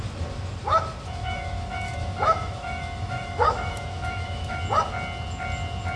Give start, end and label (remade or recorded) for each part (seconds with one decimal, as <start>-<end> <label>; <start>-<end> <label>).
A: 0.0-1.2 recorded; 1.2-4.6 remade; 4.6-6.0 recorded